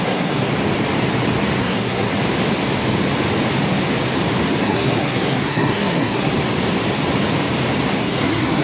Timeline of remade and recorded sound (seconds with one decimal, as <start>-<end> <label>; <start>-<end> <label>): 0.0-0.5 remade; 0.5-1.6 recorded; 1.6-2.1 remade; 2.1-4.6 recorded; 4.6-6.3 remade; 6.3-8.0 recorded; 8.0-8.6 remade